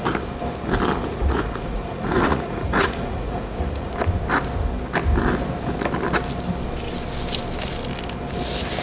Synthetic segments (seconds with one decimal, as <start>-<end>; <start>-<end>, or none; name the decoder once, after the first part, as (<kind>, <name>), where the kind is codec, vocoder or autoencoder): 1.0-3.9 (vocoder, Vocos)